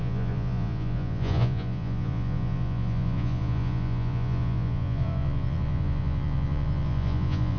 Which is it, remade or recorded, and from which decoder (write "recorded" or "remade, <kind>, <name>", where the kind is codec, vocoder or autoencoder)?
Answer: remade, vocoder, Vocos